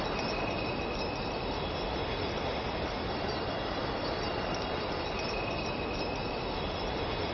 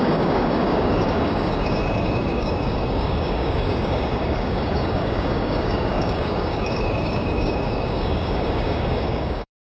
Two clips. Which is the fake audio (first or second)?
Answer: second